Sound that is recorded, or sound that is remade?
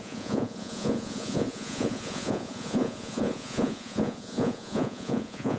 remade